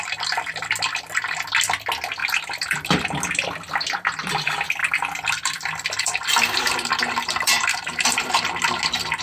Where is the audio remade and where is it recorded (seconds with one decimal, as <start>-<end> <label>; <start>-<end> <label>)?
0.0-2.2 recorded; 2.2-3.0 remade; 3.0-4.8 recorded; 4.8-8.4 remade; 8.4-9.2 recorded